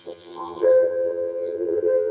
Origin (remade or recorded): remade